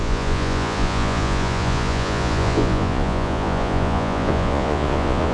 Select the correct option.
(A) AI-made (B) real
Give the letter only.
A